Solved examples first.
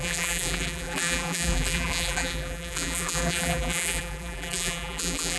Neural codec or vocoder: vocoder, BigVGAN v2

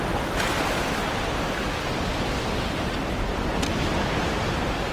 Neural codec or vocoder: none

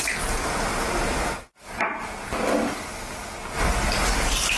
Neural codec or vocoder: none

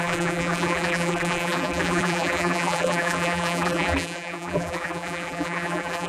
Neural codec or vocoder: vocoder, BigVGAN v2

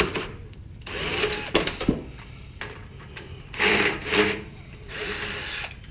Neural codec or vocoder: vocoder, BigVGAN v2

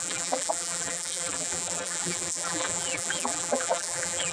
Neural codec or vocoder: vocoder, BigVGAN v2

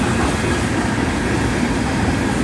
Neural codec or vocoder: none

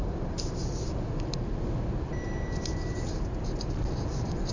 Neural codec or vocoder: vocoder, BigVGAN v2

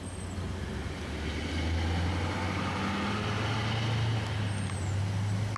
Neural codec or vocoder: none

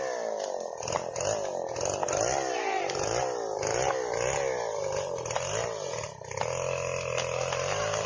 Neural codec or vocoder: none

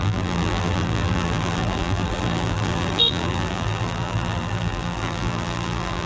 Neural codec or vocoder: vocoder, BigVGAN v2